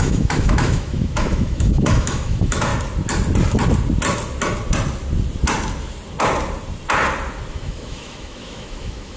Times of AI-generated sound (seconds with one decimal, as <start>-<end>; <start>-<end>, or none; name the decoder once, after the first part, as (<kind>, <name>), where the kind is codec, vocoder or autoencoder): 0.0-2.7 (autoencoder, DAC-VAE); 7.5-9.2